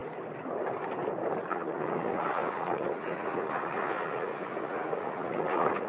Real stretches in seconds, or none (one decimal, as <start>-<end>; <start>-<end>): 0.0-1.5